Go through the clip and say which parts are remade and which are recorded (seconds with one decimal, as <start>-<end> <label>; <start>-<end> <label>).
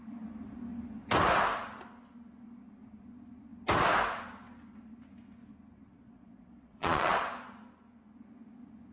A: 0.0-5.9 recorded; 5.9-7.2 remade; 7.2-8.9 recorded